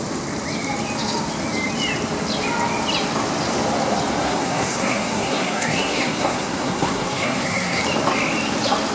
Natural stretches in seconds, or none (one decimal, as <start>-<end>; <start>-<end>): 0.0-4.2; 7.8-8.9